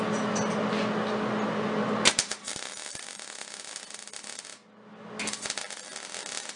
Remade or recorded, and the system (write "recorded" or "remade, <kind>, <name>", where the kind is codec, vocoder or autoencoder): recorded